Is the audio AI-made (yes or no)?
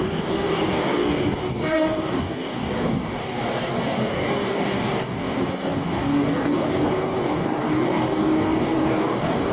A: yes